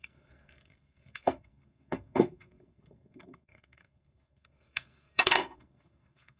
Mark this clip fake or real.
fake